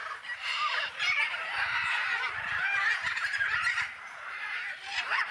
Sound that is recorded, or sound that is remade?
remade